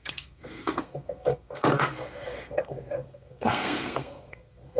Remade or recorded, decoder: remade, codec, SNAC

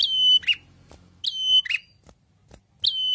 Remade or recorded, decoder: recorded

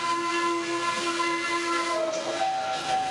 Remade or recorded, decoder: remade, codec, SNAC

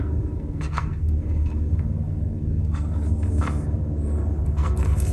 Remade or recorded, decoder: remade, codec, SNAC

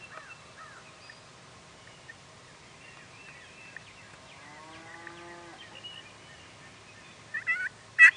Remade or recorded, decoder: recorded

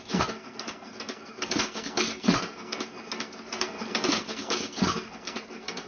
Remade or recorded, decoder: remade, codec, SNAC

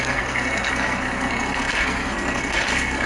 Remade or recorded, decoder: remade, codec, SNAC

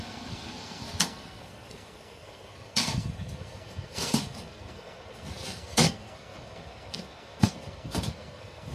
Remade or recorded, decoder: remade, codec, SNAC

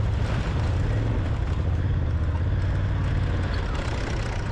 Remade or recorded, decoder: recorded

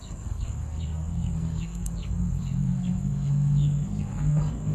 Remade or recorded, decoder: remade, codec, SNAC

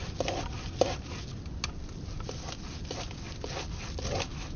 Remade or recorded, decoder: recorded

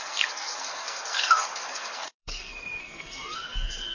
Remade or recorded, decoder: remade, codec, SNAC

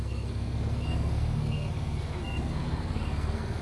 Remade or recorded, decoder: remade, codec, SNAC